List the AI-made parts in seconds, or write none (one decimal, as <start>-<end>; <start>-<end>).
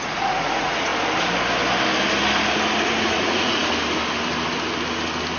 0.0-0.9; 3.0-3.6